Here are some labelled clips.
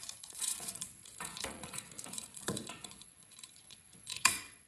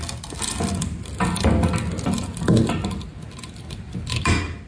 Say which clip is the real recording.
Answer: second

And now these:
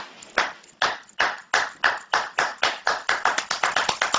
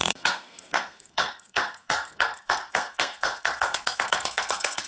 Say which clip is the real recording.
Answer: first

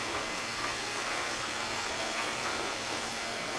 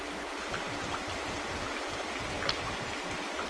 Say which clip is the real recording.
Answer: second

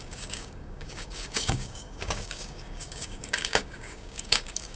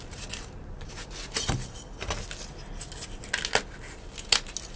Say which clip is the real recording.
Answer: second